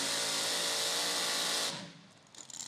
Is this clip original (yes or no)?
yes